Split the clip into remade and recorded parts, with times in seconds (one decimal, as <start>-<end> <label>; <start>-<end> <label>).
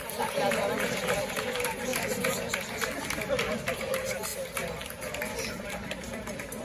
0.0-1.9 remade; 1.9-3.7 recorded; 3.7-4.3 remade; 4.3-5.5 recorded; 5.5-6.6 remade